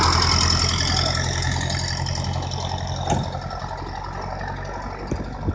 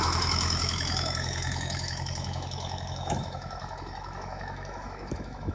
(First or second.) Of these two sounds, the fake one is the second